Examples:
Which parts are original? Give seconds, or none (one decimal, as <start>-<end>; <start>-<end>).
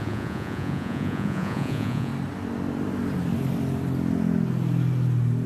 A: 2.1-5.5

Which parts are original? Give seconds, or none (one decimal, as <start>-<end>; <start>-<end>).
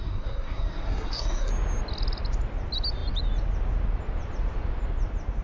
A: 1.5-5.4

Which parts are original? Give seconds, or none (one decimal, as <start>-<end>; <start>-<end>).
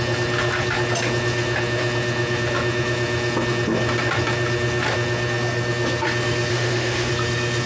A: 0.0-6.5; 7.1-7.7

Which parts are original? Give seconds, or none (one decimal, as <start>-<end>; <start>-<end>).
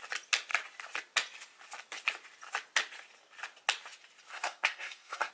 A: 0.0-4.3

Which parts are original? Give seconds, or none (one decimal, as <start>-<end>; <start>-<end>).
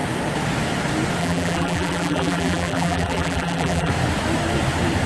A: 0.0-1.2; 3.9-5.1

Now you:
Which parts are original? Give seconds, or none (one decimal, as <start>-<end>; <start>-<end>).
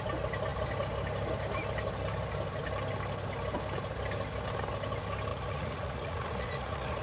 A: 0.0-5.3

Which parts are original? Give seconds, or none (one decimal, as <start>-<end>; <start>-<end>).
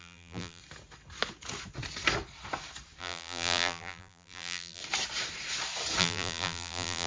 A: 0.6-3.0; 4.8-6.0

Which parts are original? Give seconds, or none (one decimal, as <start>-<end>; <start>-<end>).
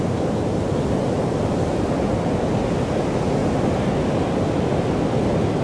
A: 0.0-5.6